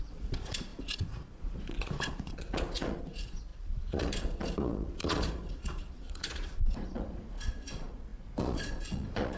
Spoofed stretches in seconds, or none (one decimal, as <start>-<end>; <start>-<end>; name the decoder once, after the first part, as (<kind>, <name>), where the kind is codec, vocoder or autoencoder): 0.0-9.4 (vocoder, Vocos)